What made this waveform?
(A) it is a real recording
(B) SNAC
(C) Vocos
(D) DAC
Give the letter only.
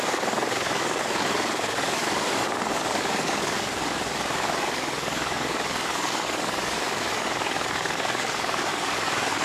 D